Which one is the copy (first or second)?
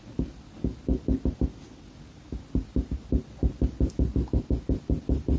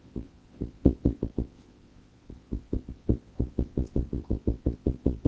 second